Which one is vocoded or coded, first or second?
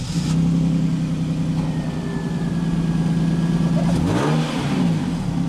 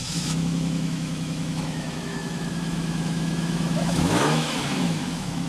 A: second